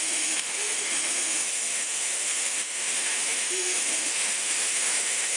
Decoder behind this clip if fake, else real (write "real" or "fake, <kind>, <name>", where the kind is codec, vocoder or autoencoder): fake, autoencoder, DAC-VAE